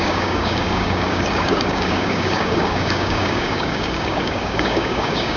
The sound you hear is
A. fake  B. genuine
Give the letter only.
A